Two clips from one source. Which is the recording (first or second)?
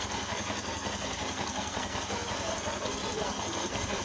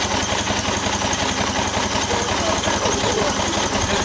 second